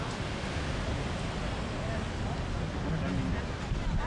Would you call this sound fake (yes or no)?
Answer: no